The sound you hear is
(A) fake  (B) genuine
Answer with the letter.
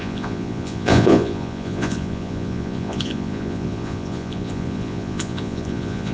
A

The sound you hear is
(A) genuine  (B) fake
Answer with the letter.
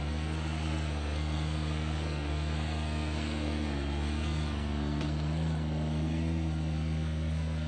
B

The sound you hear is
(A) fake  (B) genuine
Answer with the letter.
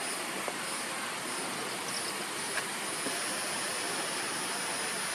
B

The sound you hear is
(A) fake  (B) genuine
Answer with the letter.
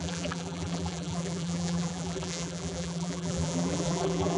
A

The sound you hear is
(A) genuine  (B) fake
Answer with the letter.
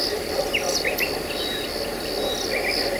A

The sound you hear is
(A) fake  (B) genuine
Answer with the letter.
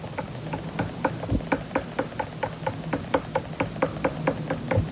B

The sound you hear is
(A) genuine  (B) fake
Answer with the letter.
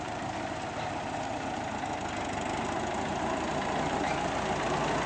A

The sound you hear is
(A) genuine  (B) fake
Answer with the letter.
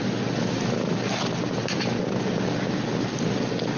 A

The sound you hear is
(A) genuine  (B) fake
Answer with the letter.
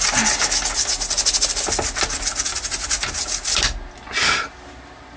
A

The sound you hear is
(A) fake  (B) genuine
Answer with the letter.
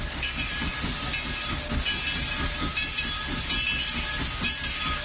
B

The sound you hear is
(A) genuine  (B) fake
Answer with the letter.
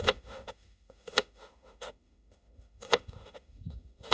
B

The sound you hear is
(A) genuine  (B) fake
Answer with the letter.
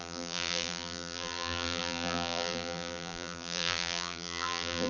B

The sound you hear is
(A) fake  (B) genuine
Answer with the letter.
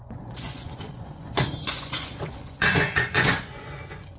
A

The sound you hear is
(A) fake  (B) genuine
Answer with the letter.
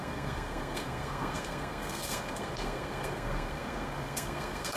A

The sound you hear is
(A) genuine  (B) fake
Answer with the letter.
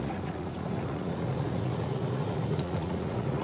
B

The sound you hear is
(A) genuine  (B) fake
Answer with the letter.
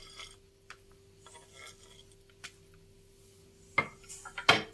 A